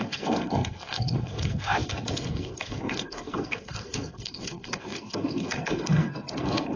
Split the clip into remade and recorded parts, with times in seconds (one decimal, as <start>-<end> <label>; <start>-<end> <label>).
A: 0.0-6.8 remade